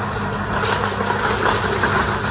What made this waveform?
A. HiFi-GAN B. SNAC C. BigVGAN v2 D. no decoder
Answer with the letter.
D